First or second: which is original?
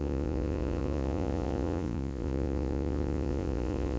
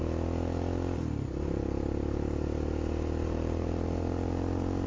second